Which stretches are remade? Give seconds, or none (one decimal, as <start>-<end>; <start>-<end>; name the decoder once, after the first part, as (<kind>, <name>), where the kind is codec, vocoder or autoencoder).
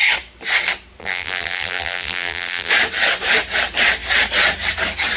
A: 1.0-2.7 (vocoder, BigVGAN v2)